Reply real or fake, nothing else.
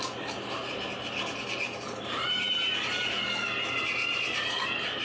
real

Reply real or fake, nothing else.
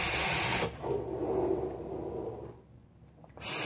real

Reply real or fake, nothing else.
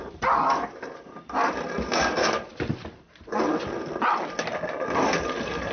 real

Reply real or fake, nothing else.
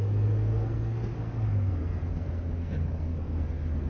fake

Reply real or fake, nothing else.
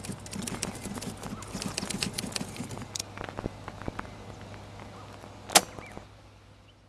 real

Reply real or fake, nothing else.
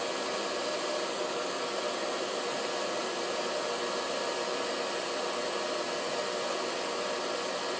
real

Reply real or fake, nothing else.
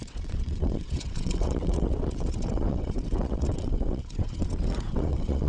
fake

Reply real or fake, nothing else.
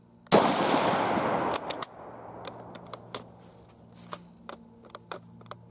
real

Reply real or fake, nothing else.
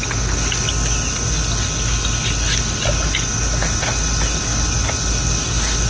real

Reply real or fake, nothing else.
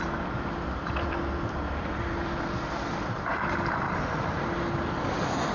fake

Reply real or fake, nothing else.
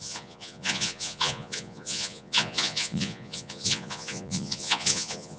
fake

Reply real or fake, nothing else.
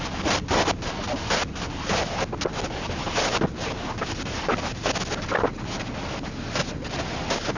real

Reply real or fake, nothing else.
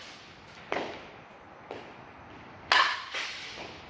real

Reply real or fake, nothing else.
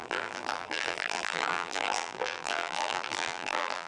fake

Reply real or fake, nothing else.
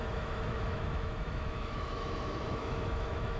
fake